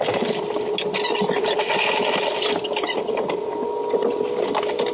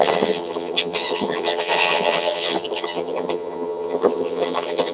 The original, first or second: first